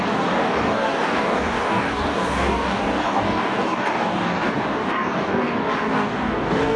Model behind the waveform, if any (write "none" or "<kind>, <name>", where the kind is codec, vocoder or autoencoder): codec, DAC